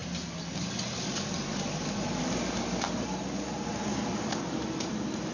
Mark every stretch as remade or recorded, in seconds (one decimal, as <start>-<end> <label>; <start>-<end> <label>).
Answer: 0.0-5.3 recorded